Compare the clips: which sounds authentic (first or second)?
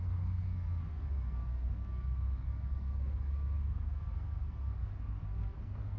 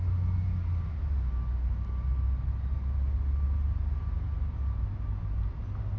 second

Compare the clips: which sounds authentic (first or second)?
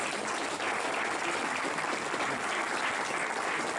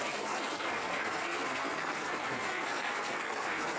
first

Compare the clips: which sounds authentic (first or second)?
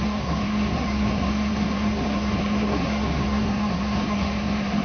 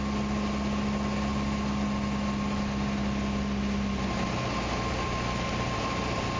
second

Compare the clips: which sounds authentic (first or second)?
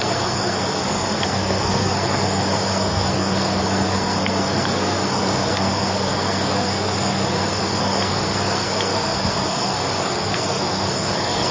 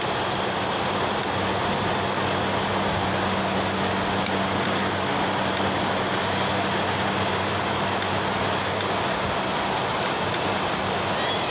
second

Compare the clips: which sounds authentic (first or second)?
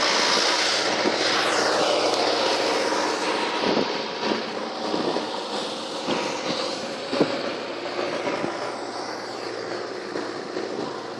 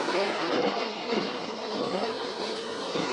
first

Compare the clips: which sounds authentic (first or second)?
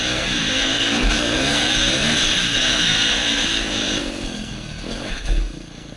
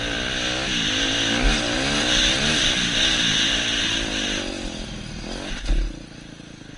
second